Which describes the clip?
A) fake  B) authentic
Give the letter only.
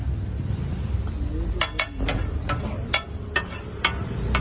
B